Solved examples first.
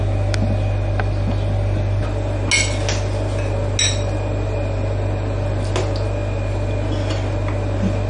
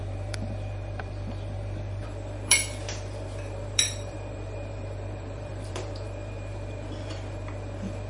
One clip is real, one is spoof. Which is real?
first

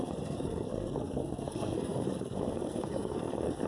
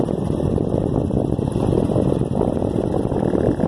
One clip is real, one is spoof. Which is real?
second